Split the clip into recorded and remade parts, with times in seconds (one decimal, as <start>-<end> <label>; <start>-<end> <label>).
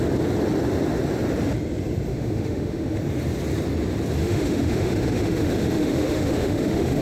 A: 0.0-2.1 recorded; 2.1-3.0 remade; 3.0-4.2 recorded; 4.2-7.0 remade